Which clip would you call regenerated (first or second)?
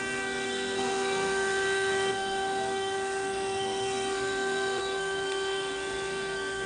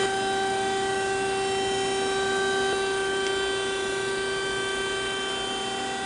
first